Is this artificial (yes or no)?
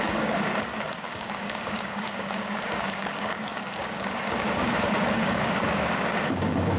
yes